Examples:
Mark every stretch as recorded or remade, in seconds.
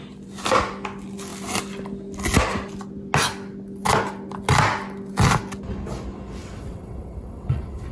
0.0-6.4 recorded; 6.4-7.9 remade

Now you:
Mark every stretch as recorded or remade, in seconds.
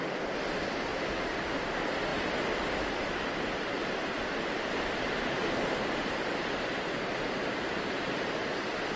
0.0-0.9 recorded; 0.9-1.6 remade; 1.6-3.8 recorded; 3.8-8.4 remade; 8.4-9.0 recorded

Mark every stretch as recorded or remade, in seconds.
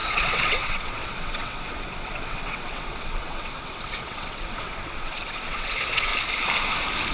0.0-6.1 remade; 6.1-7.1 recorded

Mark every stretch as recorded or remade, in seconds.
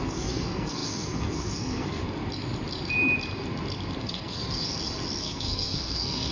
0.0-2.0 remade; 2.0-4.0 recorded; 4.0-4.4 remade; 4.4-5.2 recorded; 5.2-6.3 remade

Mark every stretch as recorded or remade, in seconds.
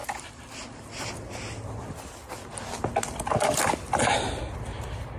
0.0-5.2 recorded